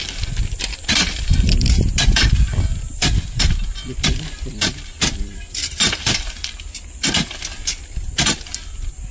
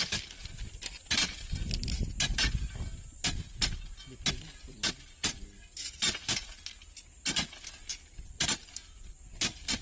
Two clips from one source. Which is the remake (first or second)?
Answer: first